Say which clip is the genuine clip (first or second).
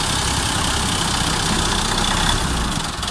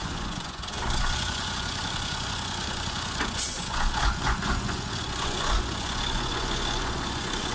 first